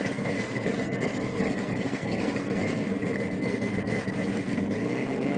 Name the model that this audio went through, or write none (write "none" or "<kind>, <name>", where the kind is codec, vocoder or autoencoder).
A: codec, SNAC